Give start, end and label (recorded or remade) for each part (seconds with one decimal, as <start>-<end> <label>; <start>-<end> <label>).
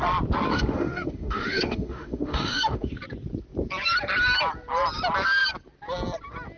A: 0.0-0.5 recorded; 0.5-3.0 remade; 3.0-6.6 recorded